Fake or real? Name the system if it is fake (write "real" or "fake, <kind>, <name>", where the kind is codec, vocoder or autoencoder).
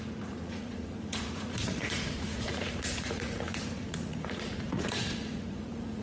fake, vocoder, Vocos